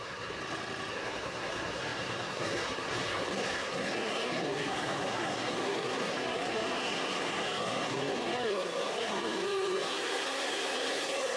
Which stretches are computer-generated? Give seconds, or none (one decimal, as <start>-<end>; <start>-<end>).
0.0-0.4; 0.9-11.4